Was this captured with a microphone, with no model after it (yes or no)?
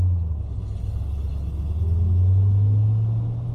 yes